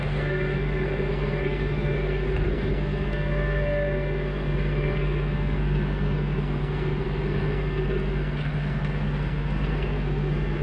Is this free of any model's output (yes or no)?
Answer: no